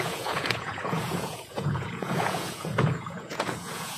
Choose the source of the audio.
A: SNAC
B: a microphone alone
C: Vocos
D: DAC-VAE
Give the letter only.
C